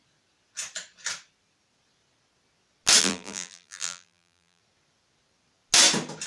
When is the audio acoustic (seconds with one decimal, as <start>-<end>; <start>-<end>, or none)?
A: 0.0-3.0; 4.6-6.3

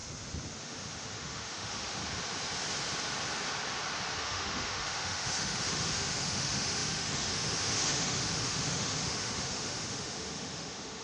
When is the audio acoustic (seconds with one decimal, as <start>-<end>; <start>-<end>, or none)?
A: 0.0-0.6; 2.0-4.2

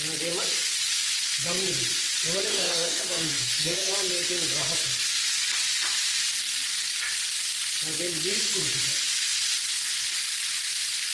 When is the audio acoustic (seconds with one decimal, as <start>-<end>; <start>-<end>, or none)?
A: 0.0-2.5; 3.9-11.1

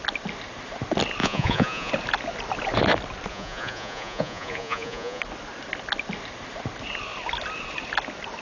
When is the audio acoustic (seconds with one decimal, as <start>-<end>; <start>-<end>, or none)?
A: 0.0-1.2; 1.9-3.3; 5.2-8.4